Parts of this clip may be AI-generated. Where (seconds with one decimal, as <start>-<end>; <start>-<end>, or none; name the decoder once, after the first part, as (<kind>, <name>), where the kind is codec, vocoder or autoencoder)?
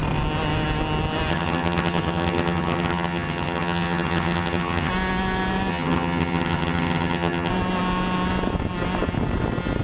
1.3-4.9 (vocoder, HiFi-GAN); 5.7-7.5